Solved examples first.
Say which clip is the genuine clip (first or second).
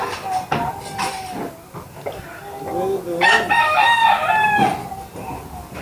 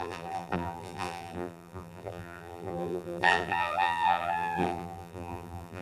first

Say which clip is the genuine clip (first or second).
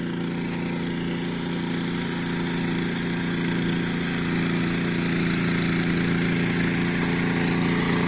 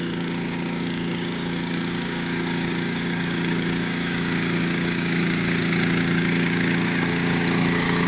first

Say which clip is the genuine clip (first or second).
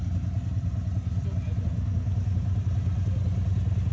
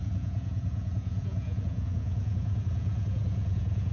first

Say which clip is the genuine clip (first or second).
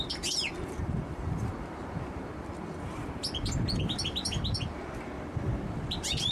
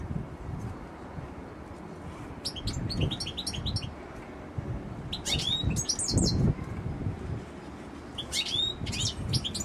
second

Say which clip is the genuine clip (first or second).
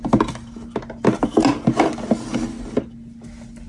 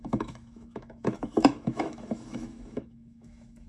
first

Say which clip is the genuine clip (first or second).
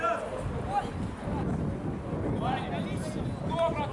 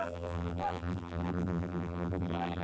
first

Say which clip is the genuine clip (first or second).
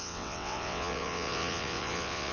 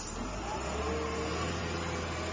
second